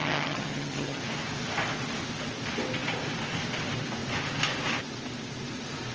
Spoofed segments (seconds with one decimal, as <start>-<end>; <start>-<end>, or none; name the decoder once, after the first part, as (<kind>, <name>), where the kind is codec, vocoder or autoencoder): 0.0-1.0 (vocoder, HiFi-GAN)